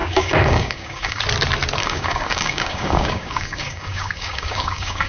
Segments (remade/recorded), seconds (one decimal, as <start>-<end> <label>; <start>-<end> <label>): 0.0-1.2 remade; 1.2-1.8 recorded; 1.8-5.1 remade